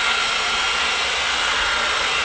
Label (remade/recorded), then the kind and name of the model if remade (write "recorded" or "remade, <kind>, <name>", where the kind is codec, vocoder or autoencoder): recorded